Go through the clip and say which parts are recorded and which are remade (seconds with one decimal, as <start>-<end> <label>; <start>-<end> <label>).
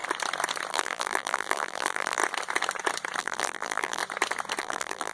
0.0-0.7 recorded; 0.7-2.2 remade; 2.2-3.2 recorded; 3.2-4.0 remade; 4.0-4.6 recorded; 4.6-5.1 remade